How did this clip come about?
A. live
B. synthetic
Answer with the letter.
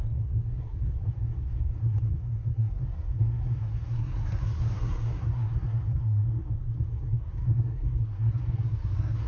B